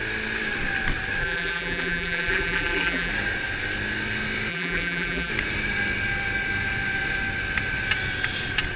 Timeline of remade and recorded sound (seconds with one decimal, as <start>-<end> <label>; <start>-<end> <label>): 0.0-1.2 recorded; 1.2-3.1 remade; 3.1-4.5 recorded; 4.5-5.3 remade; 5.3-8.8 recorded